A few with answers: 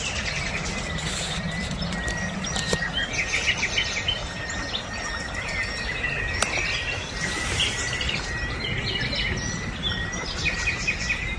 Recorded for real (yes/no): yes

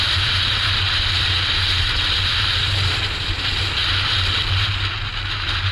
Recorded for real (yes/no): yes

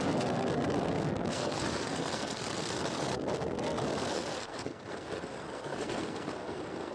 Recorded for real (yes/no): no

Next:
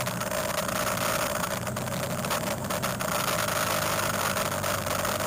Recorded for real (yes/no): yes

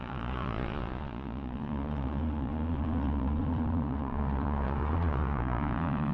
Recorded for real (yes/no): no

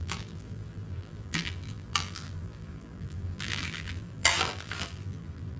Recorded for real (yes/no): no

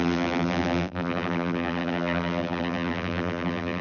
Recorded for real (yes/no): no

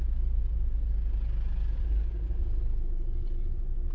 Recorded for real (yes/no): yes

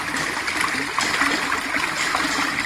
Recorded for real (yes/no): yes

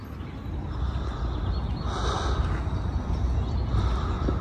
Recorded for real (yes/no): yes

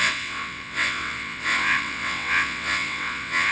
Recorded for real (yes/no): no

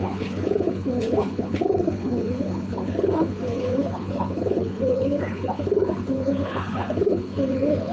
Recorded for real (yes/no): no